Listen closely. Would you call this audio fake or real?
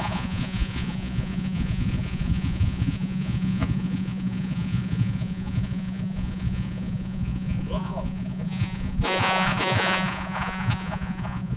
fake